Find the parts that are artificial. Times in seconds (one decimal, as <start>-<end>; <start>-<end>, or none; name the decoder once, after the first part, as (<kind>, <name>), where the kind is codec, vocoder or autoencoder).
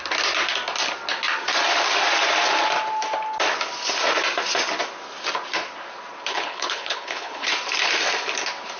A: 6.3-7.5 (codec, HILCodec)